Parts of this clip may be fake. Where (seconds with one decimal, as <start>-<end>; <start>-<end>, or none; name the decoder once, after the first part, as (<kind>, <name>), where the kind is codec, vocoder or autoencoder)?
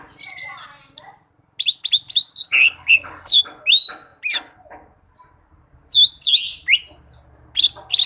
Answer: 2.6-3.4 (codec, HILCodec)